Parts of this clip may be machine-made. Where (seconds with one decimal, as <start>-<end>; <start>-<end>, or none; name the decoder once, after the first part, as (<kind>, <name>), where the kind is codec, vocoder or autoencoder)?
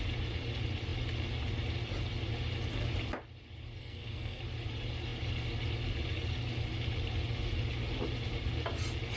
3.8-4.4 (codec, SNAC)